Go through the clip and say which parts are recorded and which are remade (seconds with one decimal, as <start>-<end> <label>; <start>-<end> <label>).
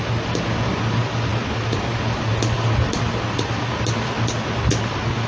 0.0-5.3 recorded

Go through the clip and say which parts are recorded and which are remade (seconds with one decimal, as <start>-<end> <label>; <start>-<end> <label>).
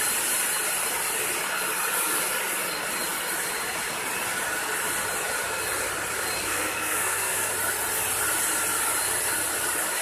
0.0-6.4 recorded; 6.4-7.5 remade; 7.5-10.0 recorded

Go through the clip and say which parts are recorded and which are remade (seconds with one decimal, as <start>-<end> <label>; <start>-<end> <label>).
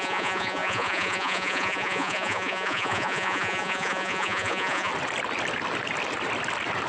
0.0-4.9 remade; 4.9-6.9 recorded